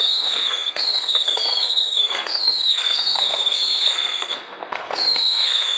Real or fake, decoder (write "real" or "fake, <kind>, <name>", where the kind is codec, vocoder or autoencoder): fake, codec, SNAC